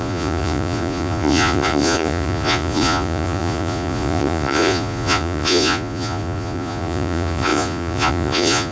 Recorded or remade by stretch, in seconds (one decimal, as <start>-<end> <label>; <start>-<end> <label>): 0.0-8.7 remade

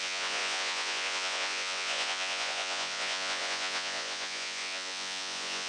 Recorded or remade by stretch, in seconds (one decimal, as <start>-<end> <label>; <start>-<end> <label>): 0.0-5.7 remade